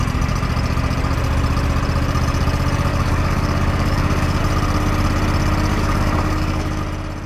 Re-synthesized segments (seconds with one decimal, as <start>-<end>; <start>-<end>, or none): 2.9-4.4; 5.7-6.8